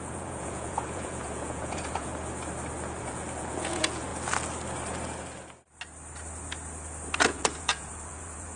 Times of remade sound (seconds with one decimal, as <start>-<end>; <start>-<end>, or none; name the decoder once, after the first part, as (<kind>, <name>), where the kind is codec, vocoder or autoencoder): 0.0-2.1 (vocoder, Vocos); 3.0-4.1; 7.2-8.6